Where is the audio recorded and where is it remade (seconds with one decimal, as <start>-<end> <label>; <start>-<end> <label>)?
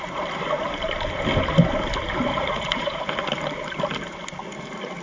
0.0-2.3 recorded; 2.3-3.0 remade; 3.0-5.0 recorded